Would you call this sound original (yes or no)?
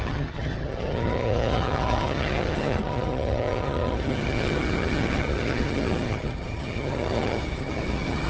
no